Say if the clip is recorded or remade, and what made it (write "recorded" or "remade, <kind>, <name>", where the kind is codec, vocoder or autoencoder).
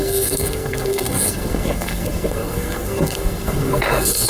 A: remade, codec, SNAC